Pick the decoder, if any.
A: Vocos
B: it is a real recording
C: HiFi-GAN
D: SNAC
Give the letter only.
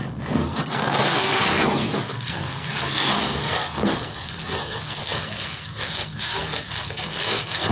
D